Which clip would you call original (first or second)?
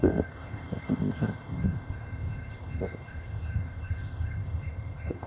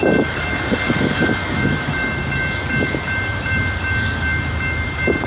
second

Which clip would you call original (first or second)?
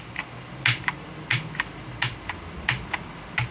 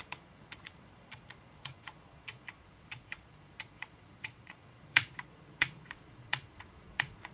first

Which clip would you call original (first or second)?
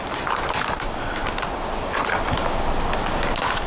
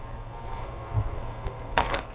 first